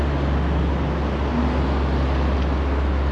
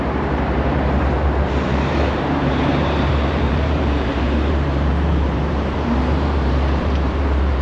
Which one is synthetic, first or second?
second